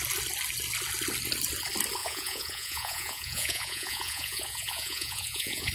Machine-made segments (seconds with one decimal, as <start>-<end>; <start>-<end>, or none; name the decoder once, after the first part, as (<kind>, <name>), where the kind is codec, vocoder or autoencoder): 2.0-5.7 (vocoder, Vocos)